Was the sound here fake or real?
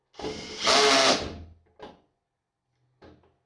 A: real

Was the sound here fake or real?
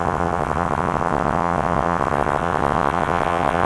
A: fake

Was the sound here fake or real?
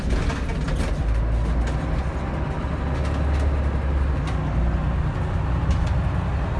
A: real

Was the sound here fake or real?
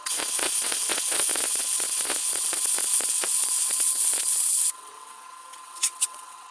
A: fake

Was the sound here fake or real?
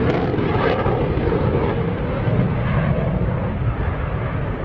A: real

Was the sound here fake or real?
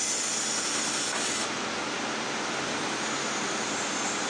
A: real